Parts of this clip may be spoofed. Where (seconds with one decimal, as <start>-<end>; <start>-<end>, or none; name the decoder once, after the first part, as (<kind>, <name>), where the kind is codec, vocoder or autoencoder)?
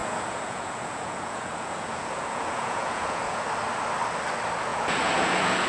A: 0.0-3.4 (vocoder, Vocos); 4.7-5.7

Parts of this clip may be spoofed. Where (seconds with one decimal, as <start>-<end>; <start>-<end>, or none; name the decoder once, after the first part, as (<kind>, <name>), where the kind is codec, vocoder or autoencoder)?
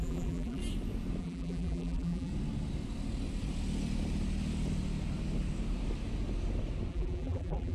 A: 0.0-0.6 (vocoder, BigVGAN v2); 1.2-2.3; 6.9-7.7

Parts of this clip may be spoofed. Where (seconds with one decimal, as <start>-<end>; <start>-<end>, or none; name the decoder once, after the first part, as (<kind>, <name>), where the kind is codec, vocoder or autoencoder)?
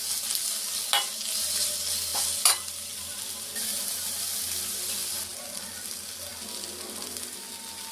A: none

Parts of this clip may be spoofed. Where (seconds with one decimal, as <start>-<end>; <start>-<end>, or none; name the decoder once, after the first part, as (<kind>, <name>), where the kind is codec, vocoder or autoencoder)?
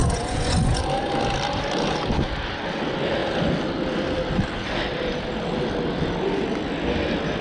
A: 0.0-0.8 (vocoder, Vocos)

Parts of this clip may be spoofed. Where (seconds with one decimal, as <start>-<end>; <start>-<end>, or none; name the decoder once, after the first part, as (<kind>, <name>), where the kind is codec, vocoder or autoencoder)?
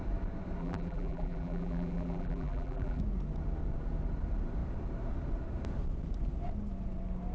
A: 0.6-3.0 (vocoder, BigVGAN v2)